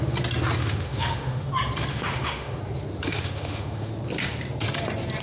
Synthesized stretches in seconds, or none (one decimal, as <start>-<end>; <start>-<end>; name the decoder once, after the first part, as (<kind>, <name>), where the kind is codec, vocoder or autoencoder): 0.6-1.5 (autoencoder, DAC-VAE); 1.9-2.6; 3.1-3.9